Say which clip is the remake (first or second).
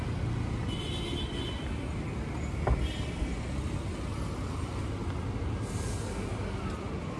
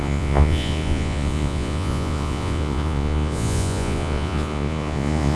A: second